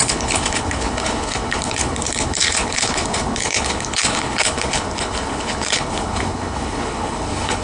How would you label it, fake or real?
fake